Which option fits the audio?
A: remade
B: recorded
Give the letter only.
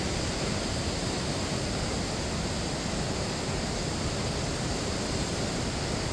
B